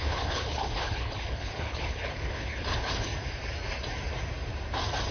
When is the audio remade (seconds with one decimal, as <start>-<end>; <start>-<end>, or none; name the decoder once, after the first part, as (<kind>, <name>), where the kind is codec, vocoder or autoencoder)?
0.0-3.1 (codec, HILCodec)